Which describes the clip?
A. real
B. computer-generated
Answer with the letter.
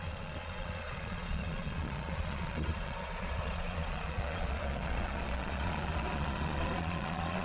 B